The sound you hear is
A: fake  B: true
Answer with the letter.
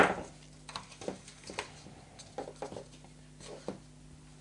B